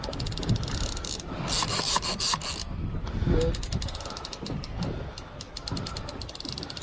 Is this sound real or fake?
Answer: real